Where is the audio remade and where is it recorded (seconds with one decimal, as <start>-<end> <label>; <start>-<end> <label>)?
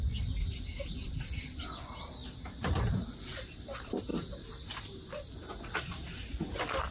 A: 0.0-2.2 remade; 2.2-2.7 recorded; 2.7-4.1 remade; 4.1-5.6 recorded; 5.6-6.9 remade